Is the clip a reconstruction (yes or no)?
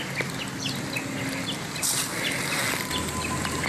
no